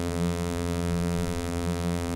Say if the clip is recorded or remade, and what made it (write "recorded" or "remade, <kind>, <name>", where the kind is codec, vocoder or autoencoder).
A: remade, vocoder, BigVGAN v2